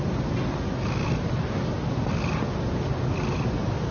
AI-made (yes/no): no